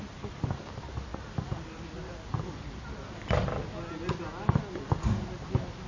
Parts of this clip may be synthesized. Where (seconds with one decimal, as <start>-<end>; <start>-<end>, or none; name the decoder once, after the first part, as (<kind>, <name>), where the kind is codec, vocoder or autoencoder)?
none

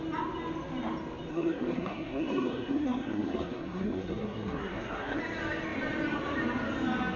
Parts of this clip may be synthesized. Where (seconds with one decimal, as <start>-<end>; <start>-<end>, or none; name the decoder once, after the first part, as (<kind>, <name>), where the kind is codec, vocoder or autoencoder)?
1.3-5.2 (codec, SNAC)